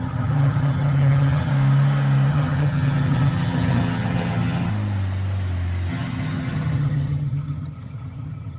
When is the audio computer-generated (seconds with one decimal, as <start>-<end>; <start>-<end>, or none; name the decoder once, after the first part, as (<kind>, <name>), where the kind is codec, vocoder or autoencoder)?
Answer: 0.0-1.5 (vocoder, HiFi-GAN); 2.3-4.7; 5.9-8.6